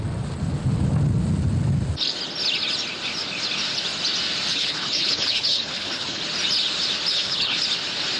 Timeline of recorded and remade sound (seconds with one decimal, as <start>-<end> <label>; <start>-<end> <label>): 0.0-4.5 recorded; 4.5-6.2 remade; 6.2-7.1 recorded; 7.1-7.6 remade; 7.6-8.2 recorded